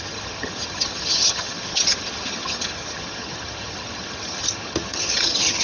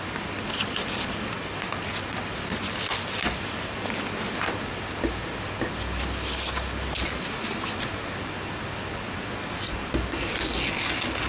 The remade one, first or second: first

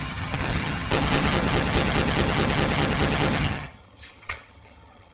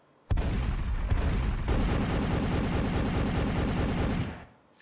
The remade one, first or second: first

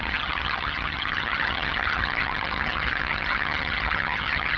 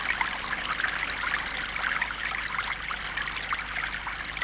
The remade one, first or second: first